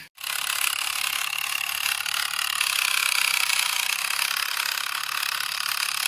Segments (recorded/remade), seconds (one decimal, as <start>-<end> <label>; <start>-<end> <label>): 0.0-6.1 recorded